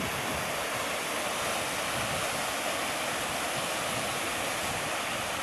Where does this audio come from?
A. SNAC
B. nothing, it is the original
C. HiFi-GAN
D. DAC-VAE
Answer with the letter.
B